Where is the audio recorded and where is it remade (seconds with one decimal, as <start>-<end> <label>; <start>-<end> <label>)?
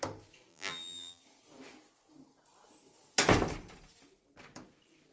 0.0-0.5 recorded; 0.5-1.2 remade; 1.2-5.1 recorded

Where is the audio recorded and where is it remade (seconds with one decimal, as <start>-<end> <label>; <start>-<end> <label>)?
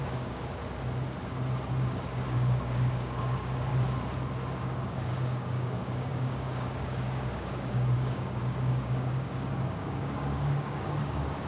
0.0-0.6 remade; 0.6-2.1 recorded; 2.1-3.7 remade; 3.7-4.6 recorded; 4.6-11.5 remade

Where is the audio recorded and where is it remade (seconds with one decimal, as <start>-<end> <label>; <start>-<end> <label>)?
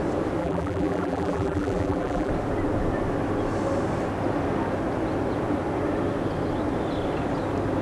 0.0-0.4 recorded; 0.4-2.3 remade; 2.3-7.8 recorded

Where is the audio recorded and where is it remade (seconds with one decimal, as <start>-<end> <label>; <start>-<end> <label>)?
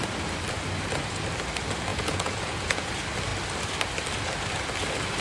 0.0-1.9 recorded; 1.9-2.9 remade; 2.9-5.2 recorded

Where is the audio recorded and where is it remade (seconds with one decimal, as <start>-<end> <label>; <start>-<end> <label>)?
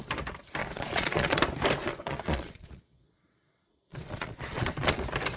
0.0-0.6 recorded; 0.6-1.4 remade; 1.4-1.8 recorded; 1.8-5.0 remade; 5.0-5.4 recorded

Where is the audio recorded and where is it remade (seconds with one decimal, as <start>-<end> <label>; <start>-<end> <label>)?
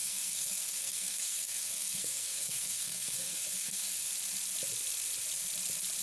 0.0-4.1 remade; 4.1-6.0 recorded